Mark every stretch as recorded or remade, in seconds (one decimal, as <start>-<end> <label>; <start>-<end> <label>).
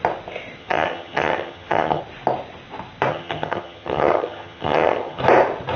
0.0-0.6 recorded; 0.6-2.0 remade; 2.0-3.1 recorded; 3.1-5.2 remade; 5.2-5.8 recorded